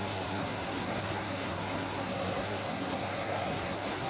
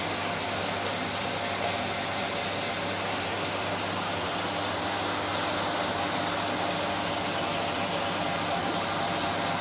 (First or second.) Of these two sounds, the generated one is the first